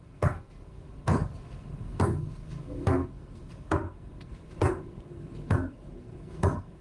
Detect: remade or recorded remade